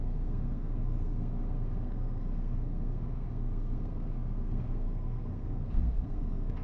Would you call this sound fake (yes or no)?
yes